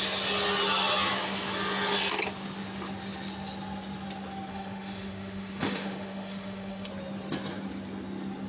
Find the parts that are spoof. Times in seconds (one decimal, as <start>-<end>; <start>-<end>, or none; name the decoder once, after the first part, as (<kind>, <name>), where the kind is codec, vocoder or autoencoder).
4.5-6.9 (autoencoder, DAC-VAE)